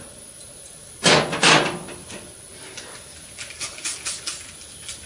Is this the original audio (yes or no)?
yes